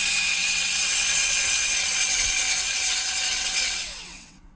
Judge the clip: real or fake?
fake